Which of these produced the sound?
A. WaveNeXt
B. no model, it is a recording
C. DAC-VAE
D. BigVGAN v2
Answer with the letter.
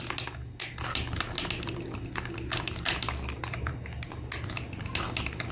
B